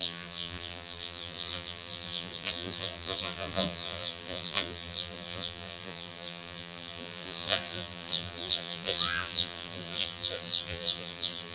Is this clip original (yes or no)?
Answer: no